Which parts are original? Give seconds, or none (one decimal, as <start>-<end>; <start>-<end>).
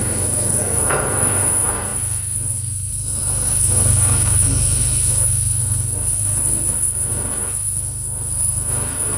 none